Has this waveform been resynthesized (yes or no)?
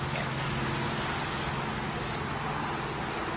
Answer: no